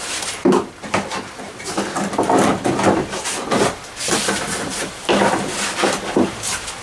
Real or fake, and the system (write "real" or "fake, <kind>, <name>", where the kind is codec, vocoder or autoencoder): real